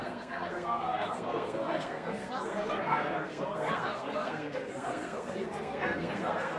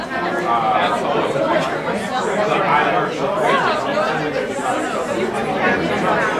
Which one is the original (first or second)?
second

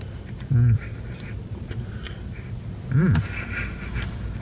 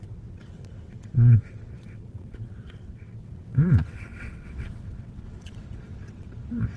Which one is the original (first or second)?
first